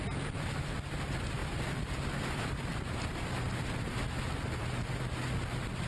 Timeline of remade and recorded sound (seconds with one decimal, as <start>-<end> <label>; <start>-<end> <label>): 0.0-5.9 recorded